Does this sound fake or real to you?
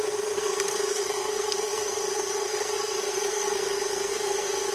fake